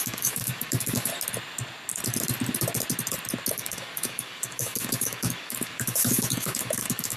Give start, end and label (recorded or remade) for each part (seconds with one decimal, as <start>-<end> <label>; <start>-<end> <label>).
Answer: 0.0-1.1 remade; 1.1-3.5 recorded; 3.5-7.2 remade